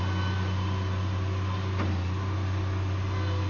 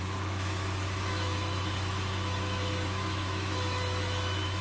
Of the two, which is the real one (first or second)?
first